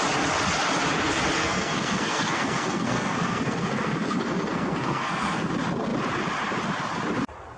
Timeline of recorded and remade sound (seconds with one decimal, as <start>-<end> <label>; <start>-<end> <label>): 0.0-1.4 recorded; 1.4-5.5 remade; 5.5-7.6 recorded